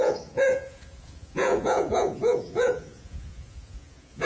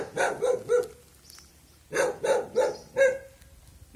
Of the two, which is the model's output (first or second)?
first